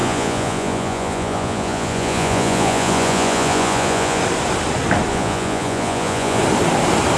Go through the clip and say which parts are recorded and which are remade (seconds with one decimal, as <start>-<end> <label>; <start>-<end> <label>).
0.0-4.2 remade; 4.2-5.1 recorded; 5.1-6.4 remade; 6.4-7.2 recorded